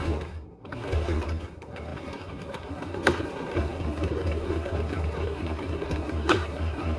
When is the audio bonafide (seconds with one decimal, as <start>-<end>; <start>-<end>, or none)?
none